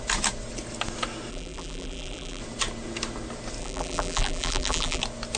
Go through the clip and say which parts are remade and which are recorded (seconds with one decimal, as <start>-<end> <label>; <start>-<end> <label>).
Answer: 0.0-1.3 recorded; 1.3-2.4 remade; 2.4-3.6 recorded; 3.6-5.0 remade; 5.0-5.4 recorded